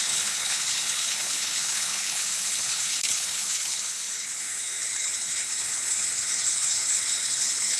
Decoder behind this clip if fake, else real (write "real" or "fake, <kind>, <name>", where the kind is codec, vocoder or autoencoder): fake, codec, HILCodec